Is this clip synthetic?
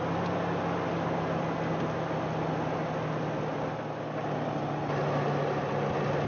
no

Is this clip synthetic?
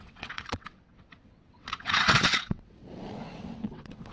yes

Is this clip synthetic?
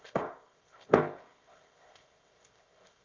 yes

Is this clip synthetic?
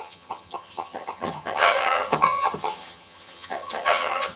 yes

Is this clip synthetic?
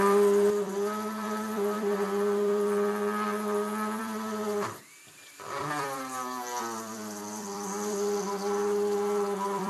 yes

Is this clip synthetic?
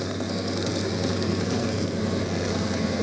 yes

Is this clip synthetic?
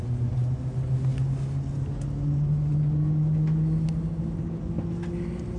no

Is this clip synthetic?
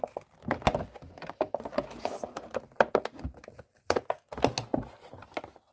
no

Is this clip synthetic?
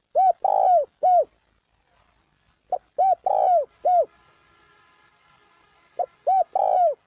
no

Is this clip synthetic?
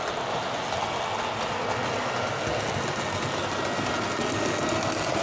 no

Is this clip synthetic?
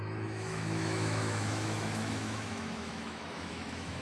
yes